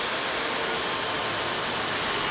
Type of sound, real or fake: real